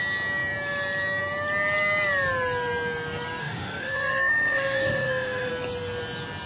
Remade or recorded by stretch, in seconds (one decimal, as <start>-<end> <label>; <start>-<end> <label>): 0.0-3.4 recorded; 3.4-5.5 remade; 5.5-6.5 recorded